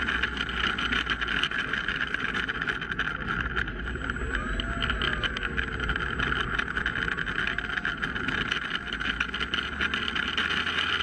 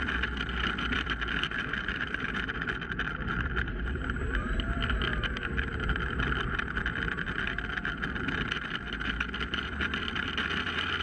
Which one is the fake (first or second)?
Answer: second